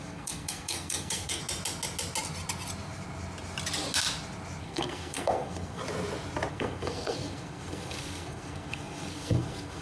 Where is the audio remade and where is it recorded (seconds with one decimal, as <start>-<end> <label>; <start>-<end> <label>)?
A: 0.0-1.4 remade; 1.4-4.6 recorded; 4.6-5.8 remade; 5.8-6.5 recorded; 6.5-9.8 remade